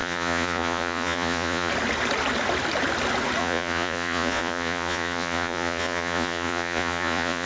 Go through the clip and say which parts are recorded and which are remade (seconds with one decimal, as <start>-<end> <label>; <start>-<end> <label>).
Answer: 0.0-1.7 remade; 1.7-3.4 recorded; 3.4-7.5 remade